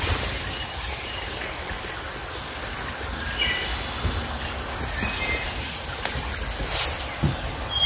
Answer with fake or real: real